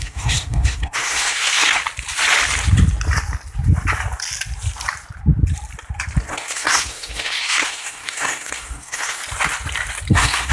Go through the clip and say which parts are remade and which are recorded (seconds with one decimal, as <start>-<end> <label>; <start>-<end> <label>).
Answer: 0.0-1.8 remade; 1.8-6.3 recorded; 6.3-9.2 remade; 9.2-10.1 recorded; 10.1-10.5 remade